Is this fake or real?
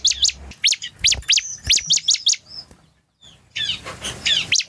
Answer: real